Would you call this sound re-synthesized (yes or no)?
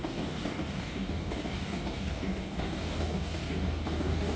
yes